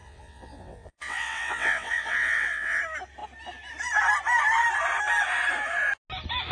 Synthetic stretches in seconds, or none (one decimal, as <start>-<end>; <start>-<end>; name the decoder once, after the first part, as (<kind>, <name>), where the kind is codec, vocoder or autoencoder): 0.0-2.8 (vocoder, WaveNeXt)